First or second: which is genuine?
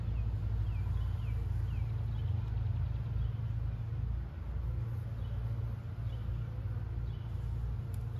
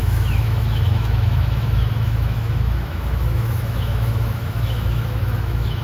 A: first